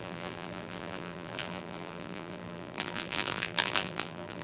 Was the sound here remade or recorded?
remade